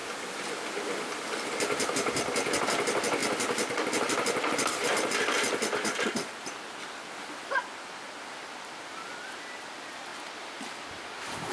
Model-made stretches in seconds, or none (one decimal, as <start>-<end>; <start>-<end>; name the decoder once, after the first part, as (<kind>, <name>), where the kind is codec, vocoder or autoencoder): none